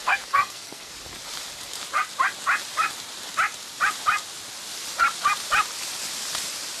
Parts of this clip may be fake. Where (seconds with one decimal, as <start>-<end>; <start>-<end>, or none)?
0.0-0.9